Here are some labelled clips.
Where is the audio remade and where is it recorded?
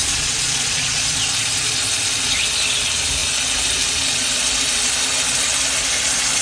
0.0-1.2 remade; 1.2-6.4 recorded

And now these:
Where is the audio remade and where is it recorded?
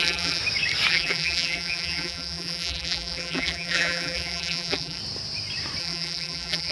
0.0-0.4 remade; 0.4-0.9 recorded; 0.9-5.0 remade; 5.0-5.8 recorded; 5.8-6.7 remade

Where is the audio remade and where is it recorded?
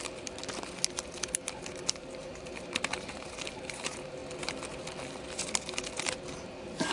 0.0-0.4 remade; 0.4-2.0 recorded; 2.0-4.2 remade; 4.2-6.9 recorded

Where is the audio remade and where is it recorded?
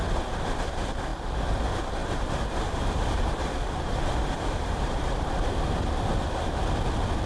0.0-2.0 recorded; 2.0-5.6 remade; 5.6-7.3 recorded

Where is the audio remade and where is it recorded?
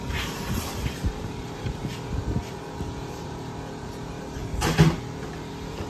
0.0-1.8 remade; 1.8-2.4 recorded; 2.4-4.4 remade; 4.4-5.5 recorded; 5.5-5.9 remade